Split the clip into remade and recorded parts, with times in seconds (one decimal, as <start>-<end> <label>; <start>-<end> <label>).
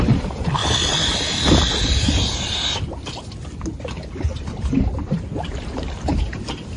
0.0-0.6 remade; 0.6-3.8 recorded; 3.8-6.8 remade